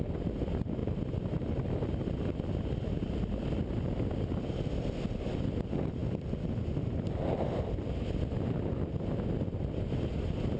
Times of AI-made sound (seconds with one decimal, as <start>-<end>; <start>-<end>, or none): none